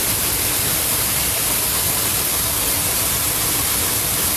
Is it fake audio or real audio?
fake